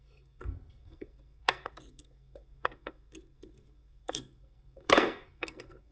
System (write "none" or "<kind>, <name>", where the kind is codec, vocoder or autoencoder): codec, SNAC